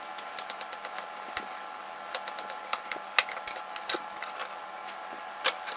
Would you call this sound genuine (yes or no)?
yes